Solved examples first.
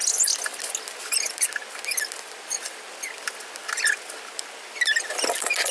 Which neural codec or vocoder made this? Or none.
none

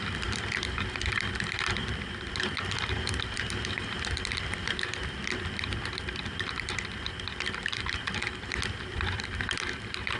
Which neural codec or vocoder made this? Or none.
vocoder, BigVGAN v2